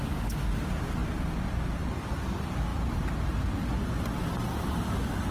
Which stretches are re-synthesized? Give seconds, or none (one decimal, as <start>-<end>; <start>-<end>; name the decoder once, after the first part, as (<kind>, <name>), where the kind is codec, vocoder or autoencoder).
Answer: none